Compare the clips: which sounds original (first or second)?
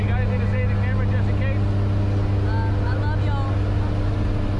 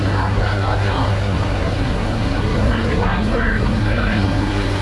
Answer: first